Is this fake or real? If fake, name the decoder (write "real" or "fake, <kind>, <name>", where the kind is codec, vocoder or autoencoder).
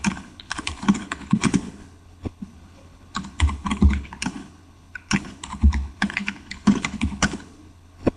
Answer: fake, codec, HILCodec